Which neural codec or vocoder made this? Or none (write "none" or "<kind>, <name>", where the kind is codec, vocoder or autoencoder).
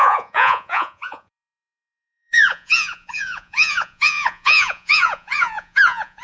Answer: vocoder, Vocos